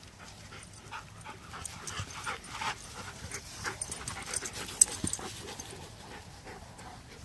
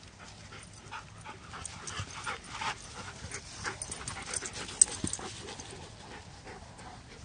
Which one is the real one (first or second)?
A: second